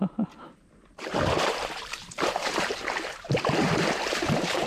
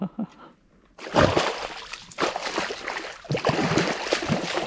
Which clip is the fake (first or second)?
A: first